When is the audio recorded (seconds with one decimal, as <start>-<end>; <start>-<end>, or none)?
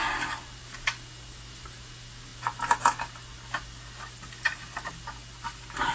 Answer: 0.0-5.9